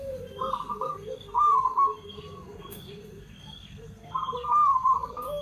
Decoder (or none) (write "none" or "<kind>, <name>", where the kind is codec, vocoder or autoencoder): codec, SNAC